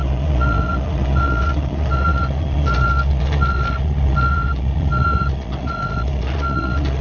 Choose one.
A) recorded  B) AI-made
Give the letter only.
B